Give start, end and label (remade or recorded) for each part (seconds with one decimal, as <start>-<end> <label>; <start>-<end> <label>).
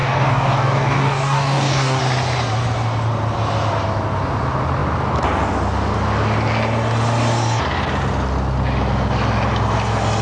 0.0-2.0 remade; 2.0-10.2 recorded